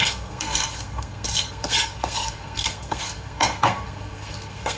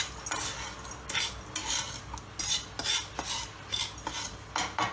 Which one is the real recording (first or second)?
second